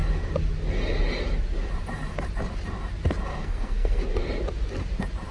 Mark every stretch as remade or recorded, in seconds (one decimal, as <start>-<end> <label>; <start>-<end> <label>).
0.0-3.3 recorded; 3.3-4.0 remade; 4.0-5.3 recorded